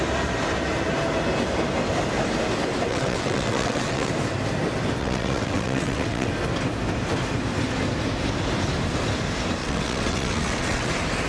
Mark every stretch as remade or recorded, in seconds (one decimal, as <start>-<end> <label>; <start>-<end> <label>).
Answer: 0.0-2.9 recorded; 2.9-4.1 remade; 4.1-5.0 recorded; 5.0-6.3 remade; 6.3-9.6 recorded; 9.6-10.9 remade; 10.9-11.3 recorded